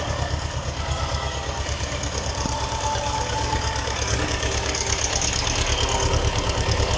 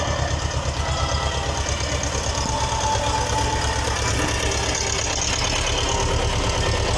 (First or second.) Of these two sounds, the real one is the second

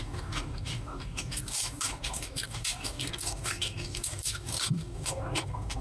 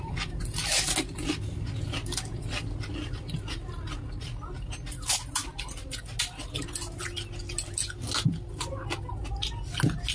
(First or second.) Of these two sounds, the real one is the second